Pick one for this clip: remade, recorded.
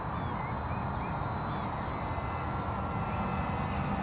recorded